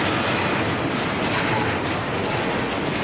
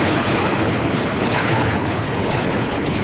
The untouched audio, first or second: first